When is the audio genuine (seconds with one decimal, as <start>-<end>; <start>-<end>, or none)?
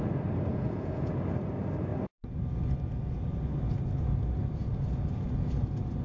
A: 0.0-0.5; 1.1-6.0